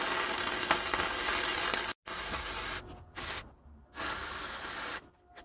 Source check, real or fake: real